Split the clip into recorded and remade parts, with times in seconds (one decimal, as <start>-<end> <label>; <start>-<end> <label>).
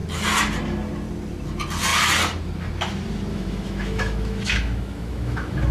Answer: 0.0-3.3 recorded; 3.3-5.7 remade